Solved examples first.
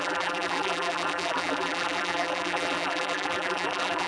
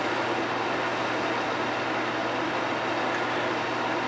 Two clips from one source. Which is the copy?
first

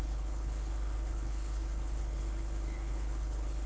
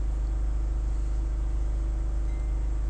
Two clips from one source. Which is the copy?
first